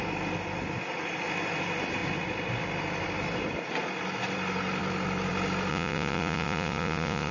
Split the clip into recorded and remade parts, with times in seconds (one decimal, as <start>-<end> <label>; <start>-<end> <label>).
0.0-5.7 recorded; 5.7-7.3 remade